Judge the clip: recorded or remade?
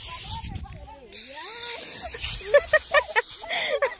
recorded